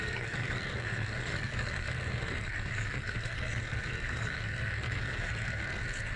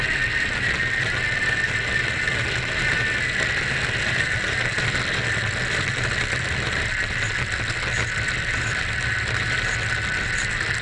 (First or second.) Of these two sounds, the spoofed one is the first